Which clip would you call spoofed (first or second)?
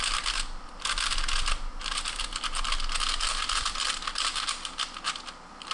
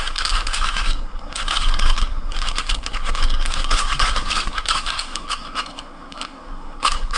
second